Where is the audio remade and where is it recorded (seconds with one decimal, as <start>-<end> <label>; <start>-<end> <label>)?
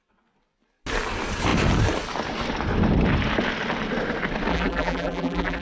0.0-4.5 recorded; 4.5-5.6 remade